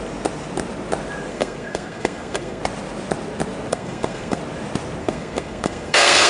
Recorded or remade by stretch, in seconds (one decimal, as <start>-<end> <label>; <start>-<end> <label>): 0.0-1.3 recorded; 1.3-2.6 remade; 2.6-3.7 recorded; 3.7-4.4 remade; 4.4-5.0 recorded; 5.0-6.3 remade